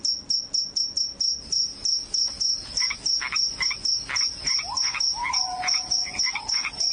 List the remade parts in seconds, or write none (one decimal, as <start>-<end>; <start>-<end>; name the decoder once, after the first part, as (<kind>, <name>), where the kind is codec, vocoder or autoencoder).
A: 5.2-6.2 (vocoder, Vocos)